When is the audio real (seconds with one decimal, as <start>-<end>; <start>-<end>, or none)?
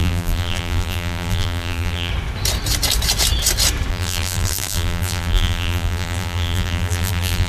2.1-3.9